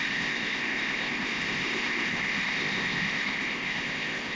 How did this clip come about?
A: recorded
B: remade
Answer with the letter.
B